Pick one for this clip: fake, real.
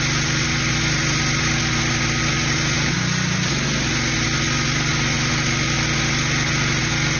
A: real